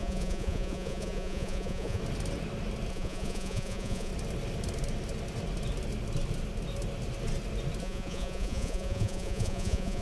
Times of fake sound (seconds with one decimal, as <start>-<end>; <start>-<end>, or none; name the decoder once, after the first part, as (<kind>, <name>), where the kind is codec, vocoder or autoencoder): 0.0-2.0 (vocoder, Vocos); 2.9-4.1; 7.8-10.0